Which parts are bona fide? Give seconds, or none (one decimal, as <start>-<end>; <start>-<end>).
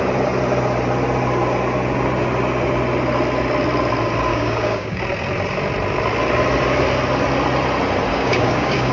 0.0-4.3; 5.0-8.1